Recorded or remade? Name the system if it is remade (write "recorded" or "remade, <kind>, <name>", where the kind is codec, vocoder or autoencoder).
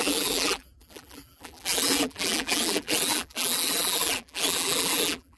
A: remade, vocoder, BigVGAN v2